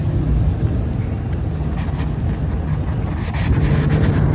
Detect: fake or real real